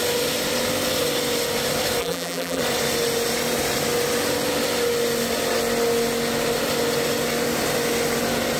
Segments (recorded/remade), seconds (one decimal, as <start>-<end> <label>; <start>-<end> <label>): 0.0-2.0 recorded; 2.0-2.6 remade; 2.6-8.6 recorded